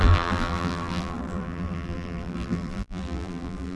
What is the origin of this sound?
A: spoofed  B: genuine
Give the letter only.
A